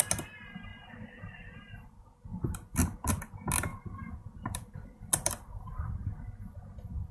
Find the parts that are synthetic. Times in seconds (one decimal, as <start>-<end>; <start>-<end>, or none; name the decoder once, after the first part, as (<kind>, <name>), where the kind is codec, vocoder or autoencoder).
2.3-3.1 (vocoder, BigVGAN v2); 3.7-5.9